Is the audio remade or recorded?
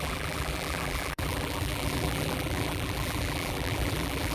remade